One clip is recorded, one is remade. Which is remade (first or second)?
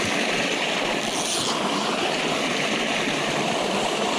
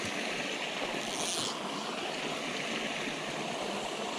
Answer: first